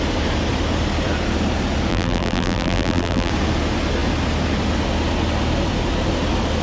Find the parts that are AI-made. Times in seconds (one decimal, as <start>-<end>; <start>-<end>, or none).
1.9-3.3